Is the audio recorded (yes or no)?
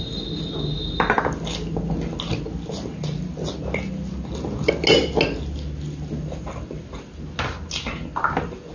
yes